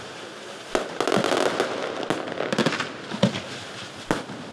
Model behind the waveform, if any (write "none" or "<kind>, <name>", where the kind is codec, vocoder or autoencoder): none